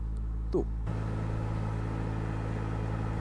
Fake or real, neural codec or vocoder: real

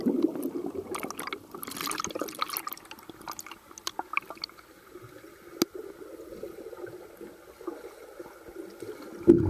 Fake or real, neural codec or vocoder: real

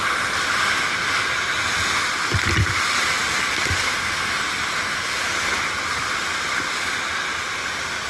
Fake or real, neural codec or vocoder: real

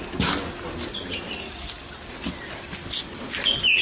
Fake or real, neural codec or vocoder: real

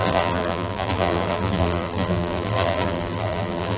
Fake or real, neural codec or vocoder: fake, vocoder, BigVGAN v2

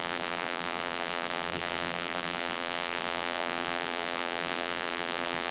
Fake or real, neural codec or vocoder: fake, vocoder, BigVGAN v2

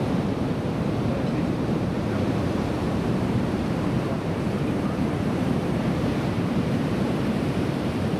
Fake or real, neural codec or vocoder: fake, vocoder, BigVGAN v2